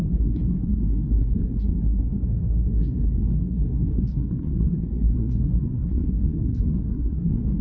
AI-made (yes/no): yes